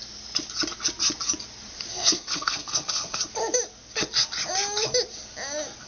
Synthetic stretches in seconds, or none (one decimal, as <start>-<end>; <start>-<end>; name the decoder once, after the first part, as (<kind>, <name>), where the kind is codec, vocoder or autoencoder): 1.9-3.2 (codec, SNAC)